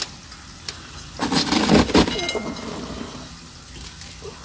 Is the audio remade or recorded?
recorded